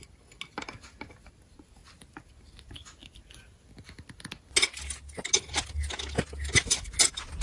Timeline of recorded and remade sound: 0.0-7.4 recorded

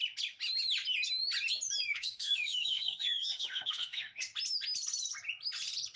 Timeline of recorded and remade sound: 0.0-1.9 recorded; 1.9-4.2 remade; 4.2-6.0 recorded